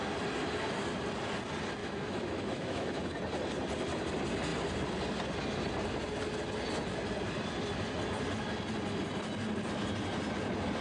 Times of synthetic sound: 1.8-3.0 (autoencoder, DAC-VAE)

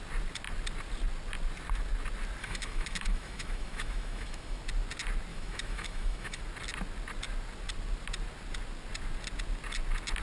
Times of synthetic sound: 2.4-4.6 (autoencoder, DAC-VAE); 5.3-6.4